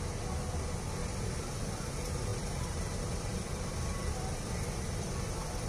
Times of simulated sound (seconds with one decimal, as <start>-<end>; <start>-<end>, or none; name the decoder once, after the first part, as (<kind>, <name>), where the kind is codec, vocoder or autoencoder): 1.0-1.9 (vocoder, BigVGAN v2); 2.3-5.7